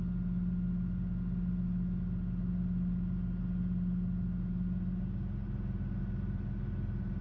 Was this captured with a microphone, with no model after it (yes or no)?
yes